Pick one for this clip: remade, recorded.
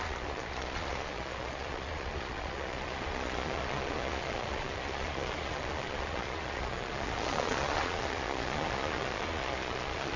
remade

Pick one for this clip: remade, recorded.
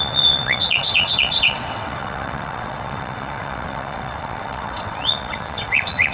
remade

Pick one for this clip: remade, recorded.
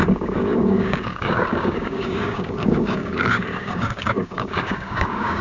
remade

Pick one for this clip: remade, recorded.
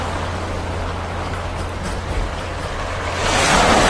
recorded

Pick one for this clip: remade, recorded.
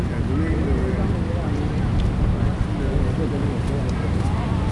recorded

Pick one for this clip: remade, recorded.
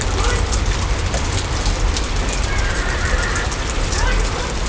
remade